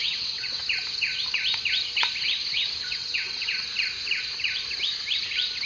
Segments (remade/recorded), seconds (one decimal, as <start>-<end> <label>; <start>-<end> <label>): 0.0-0.6 remade; 0.6-2.5 recorded; 2.5-3.5 remade; 3.5-5.7 recorded